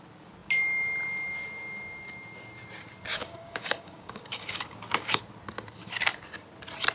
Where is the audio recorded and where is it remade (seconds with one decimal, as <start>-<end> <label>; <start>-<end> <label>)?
0.0-3.1 recorded; 3.1-5.2 remade; 5.2-6.9 recorded